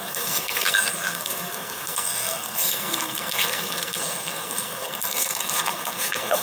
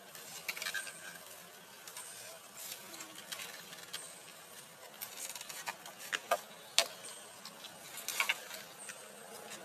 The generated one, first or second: first